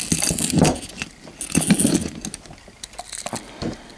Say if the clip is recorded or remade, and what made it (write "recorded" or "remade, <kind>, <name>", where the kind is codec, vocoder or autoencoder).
recorded